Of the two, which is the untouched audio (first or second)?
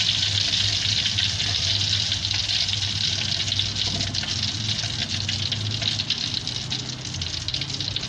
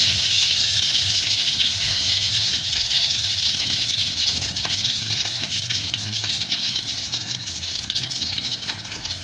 first